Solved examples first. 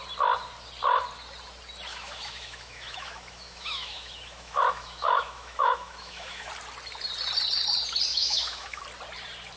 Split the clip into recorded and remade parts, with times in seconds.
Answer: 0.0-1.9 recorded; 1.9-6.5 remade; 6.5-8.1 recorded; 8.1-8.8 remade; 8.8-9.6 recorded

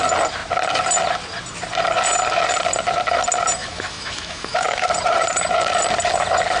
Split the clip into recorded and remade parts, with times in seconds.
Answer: 0.0-3.6 recorded; 3.6-4.9 remade; 4.9-6.6 recorded

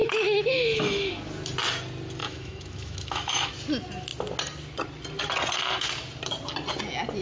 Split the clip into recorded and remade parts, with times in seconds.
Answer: 0.0-1.1 remade; 1.1-2.2 recorded; 2.2-3.5 remade; 3.5-7.2 recorded

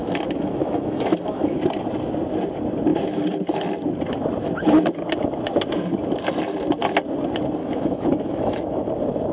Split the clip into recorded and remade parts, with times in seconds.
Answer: 0.0-1.6 remade; 1.6-7.6 recorded; 7.6-8.9 remade; 8.9-9.3 recorded

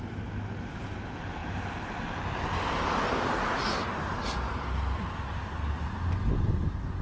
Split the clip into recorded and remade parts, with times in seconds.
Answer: 0.0-7.0 recorded

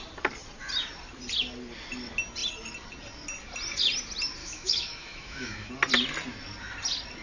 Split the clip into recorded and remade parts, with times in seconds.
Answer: 0.0-4.4 recorded; 4.4-5.7 remade; 5.7-7.2 recorded

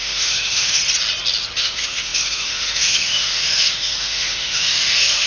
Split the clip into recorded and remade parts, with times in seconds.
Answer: 0.0-0.8 remade; 0.8-1.6 recorded; 1.6-5.3 remade